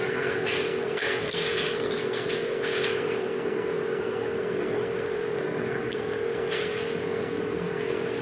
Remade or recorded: remade